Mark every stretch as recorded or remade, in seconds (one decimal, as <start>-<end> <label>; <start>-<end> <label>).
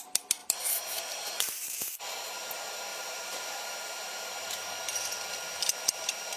0.0-0.4 recorded; 0.4-2.0 remade; 2.0-2.9 recorded; 2.9-4.3 remade; 4.3-6.4 recorded